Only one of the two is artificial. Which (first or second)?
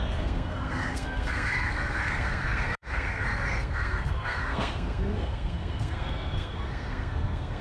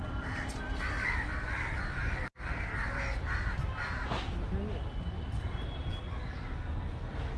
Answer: first